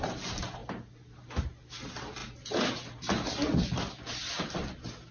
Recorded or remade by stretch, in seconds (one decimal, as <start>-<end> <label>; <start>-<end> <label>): 0.0-5.1 recorded